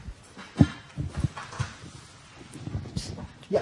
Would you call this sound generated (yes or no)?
no